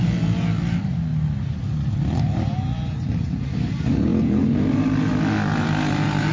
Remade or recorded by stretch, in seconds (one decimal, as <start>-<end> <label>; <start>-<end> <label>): 0.0-6.3 recorded